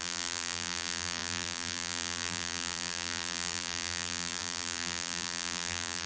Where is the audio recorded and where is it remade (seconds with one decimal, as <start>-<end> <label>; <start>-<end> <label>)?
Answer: 0.0-6.1 remade